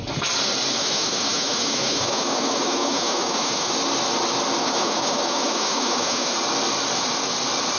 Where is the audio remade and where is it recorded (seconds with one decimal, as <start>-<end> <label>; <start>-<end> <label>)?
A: 0.0-0.8 recorded; 0.8-3.7 remade; 3.7-4.6 recorded; 4.6-6.3 remade; 6.3-7.8 recorded